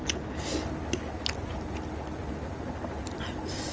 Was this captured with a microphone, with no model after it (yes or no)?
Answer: yes